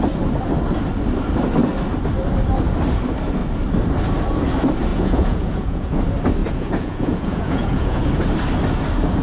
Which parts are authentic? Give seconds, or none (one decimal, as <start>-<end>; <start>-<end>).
0.0-4.9; 6.0-6.4; 8.1-9.2